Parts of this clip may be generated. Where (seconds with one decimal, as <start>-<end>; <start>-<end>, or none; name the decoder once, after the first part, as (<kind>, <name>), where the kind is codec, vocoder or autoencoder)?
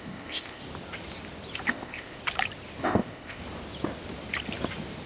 0.0-0.6 (codec, ZipCodec); 1.7-2.2; 2.8-3.4